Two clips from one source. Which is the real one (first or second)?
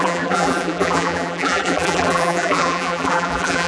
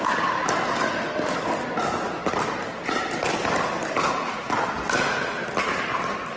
second